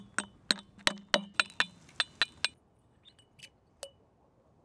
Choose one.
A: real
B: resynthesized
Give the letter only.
A